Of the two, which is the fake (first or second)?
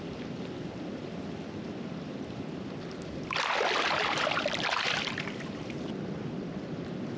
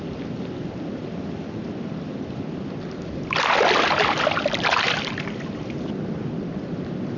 first